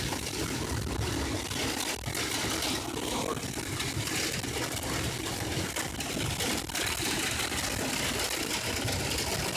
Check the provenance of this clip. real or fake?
real